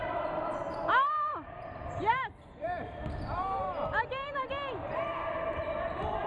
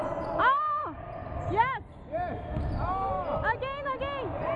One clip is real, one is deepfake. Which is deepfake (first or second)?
first